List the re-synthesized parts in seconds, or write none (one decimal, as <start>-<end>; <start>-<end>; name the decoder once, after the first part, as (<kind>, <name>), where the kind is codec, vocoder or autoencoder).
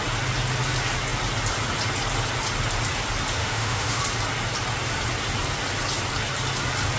3.4-4.0 (autoencoder, DAC-VAE)